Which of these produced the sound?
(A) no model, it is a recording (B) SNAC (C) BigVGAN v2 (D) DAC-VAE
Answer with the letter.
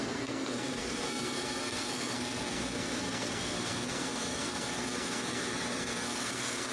B